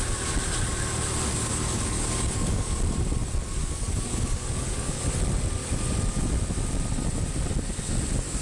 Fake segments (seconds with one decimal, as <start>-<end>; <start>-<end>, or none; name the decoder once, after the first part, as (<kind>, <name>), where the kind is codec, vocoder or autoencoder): 1.3-2.8 (codec, DAC); 3.6-5.0